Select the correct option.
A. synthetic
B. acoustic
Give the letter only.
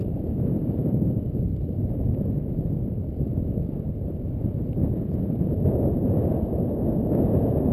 A